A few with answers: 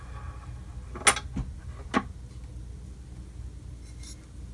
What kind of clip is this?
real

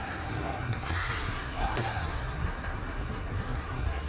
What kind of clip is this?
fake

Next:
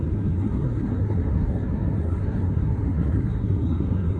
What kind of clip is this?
fake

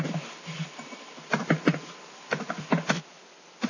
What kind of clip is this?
real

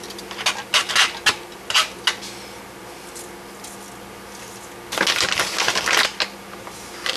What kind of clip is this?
real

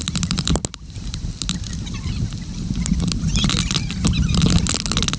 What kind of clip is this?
real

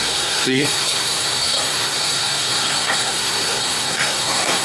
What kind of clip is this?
fake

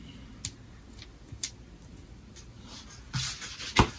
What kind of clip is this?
real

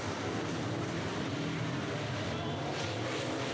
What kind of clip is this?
real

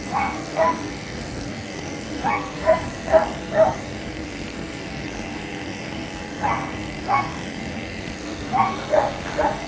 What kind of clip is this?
fake